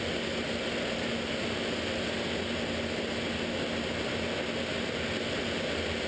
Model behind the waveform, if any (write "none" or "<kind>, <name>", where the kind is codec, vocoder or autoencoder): none